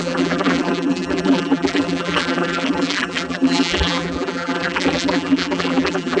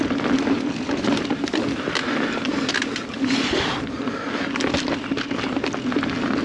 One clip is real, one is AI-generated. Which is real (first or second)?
second